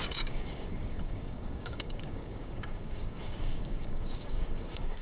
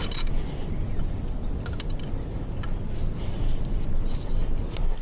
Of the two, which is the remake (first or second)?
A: first